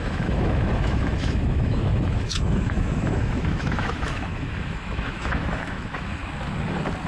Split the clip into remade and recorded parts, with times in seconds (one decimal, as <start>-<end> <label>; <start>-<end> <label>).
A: 0.0-6.2 remade; 6.2-7.1 recorded